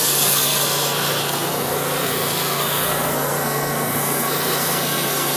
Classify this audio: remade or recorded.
remade